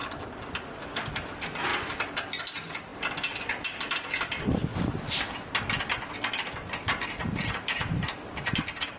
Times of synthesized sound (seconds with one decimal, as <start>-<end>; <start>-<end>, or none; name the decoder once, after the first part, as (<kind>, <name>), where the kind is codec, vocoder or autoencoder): 0.8-1.7 (vocoder, BigVGAN v2); 2.4-4.7; 6.3-9.0